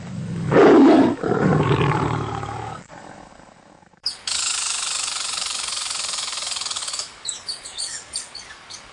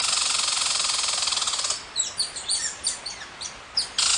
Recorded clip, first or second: second